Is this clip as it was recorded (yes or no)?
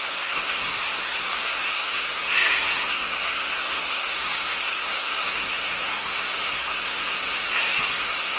no